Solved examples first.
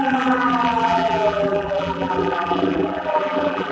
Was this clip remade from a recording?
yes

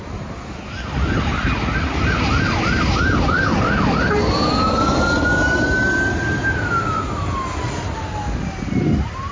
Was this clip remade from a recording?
no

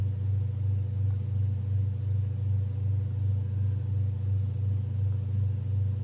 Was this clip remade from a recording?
no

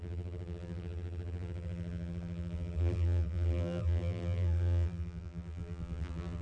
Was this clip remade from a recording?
yes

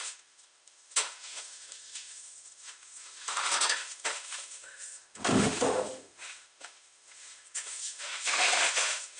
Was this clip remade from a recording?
yes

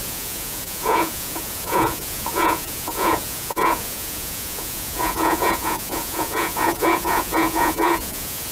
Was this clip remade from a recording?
yes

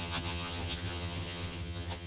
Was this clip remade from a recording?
yes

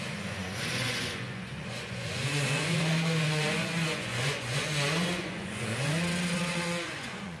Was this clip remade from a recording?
yes